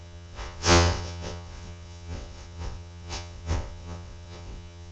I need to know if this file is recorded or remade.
remade